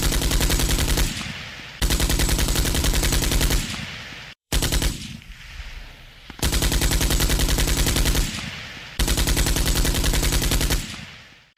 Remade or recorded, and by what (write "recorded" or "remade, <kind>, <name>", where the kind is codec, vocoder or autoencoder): remade, vocoder, BigVGAN v2